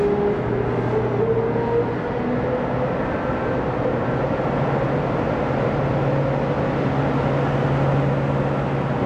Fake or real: real